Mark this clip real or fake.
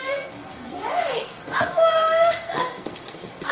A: fake